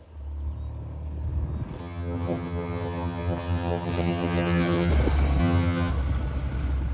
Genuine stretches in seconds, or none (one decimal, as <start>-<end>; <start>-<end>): 0.0-1.8; 4.9-5.4; 5.9-6.9